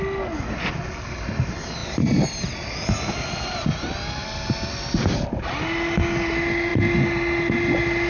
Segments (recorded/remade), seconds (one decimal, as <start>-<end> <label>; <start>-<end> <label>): 0.0-8.1 recorded